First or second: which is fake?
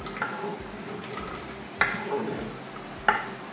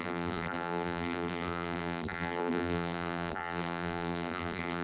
second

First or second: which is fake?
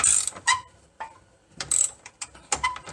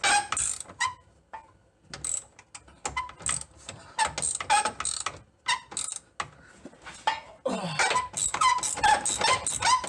first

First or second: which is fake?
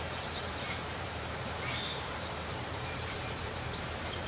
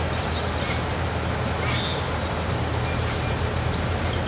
first